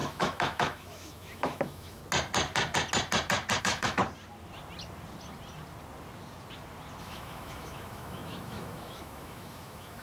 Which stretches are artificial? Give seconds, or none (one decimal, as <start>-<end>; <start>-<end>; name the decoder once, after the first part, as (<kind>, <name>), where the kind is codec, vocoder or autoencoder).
0.0-2.0 (autoencoder, DAC-VAE); 3.6-4.0; 7.0-10.0